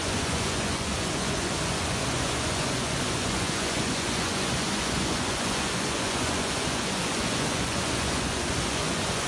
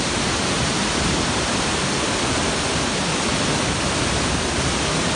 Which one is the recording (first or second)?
second